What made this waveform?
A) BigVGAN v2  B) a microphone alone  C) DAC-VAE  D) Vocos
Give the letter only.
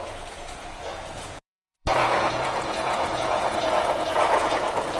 D